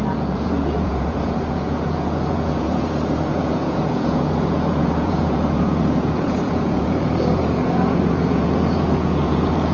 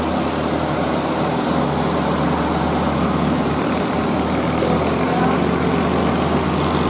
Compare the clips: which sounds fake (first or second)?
first